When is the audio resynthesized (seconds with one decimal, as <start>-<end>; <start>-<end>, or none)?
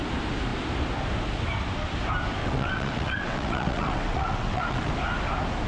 2.4-4.9